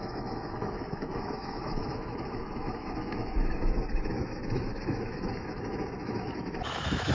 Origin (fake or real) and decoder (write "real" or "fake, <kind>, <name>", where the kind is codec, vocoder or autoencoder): fake, autoencoder, DAC-VAE